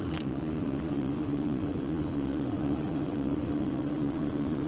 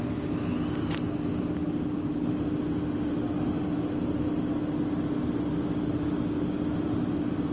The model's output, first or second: first